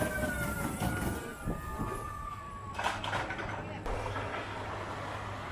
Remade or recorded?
recorded